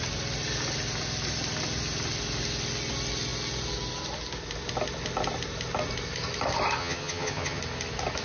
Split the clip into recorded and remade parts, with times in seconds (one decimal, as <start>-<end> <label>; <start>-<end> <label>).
0.0-6.8 recorded; 6.8-7.6 remade; 7.6-8.2 recorded